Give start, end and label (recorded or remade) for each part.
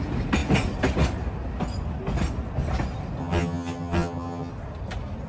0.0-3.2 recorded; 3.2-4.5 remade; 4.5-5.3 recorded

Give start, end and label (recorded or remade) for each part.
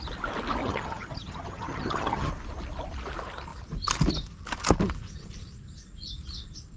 0.0-0.6 recorded; 0.6-2.3 remade; 2.3-6.8 recorded